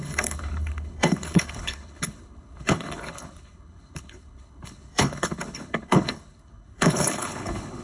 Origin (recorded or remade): remade